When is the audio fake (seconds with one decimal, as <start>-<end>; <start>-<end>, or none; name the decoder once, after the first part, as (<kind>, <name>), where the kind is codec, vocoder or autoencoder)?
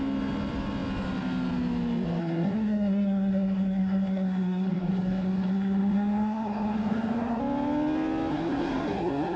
2.2-7.4 (codec, SNAC); 8.3-9.4